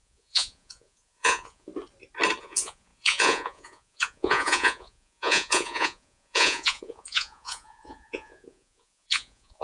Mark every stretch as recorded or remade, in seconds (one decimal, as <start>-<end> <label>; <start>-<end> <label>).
0.0-1.7 remade; 1.7-2.4 recorded; 2.4-9.6 remade